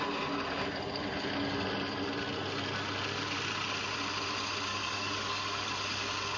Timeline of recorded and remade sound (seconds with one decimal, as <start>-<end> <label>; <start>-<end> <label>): 0.0-4.7 recorded; 4.7-5.7 remade; 5.7-6.4 recorded